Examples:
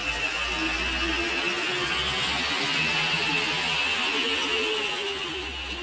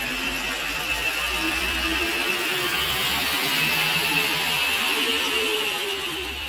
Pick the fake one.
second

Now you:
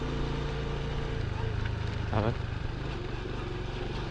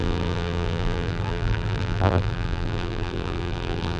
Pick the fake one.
second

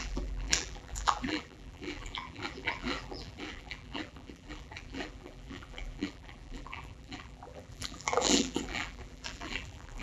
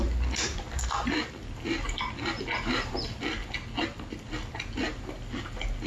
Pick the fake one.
first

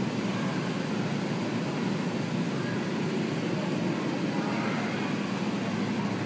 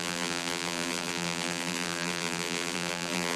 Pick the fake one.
second